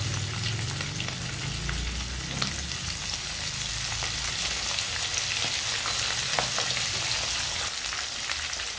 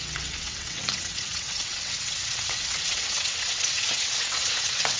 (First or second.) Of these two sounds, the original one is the first